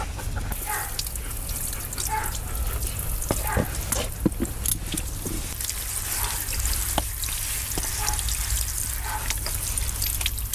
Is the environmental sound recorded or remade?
recorded